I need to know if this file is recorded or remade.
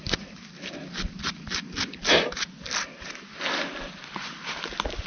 recorded